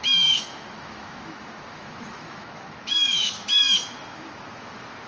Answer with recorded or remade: remade